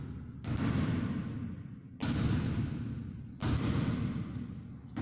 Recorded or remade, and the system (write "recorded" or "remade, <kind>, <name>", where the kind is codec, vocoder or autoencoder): recorded